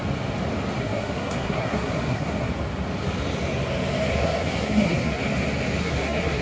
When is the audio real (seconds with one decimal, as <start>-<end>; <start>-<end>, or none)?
0.0-0.8; 2.5-4.1; 5.2-5.8